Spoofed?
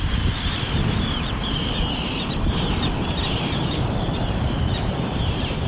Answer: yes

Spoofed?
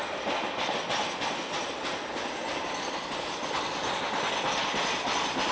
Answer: no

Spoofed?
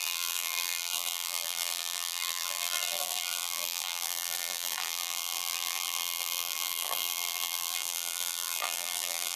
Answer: yes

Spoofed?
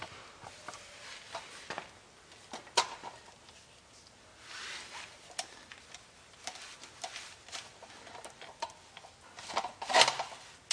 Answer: no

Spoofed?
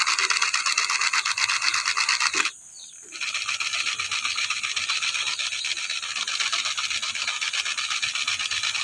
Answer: no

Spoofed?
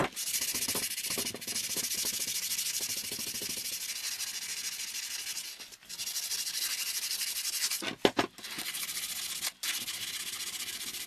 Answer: no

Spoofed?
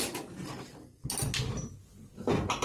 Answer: no